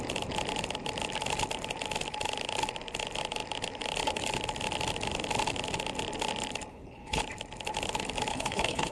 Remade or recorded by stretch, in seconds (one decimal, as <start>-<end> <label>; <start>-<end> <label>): 0.0-6.7 recorded; 6.7-7.2 remade; 7.2-8.3 recorded; 8.3-8.9 remade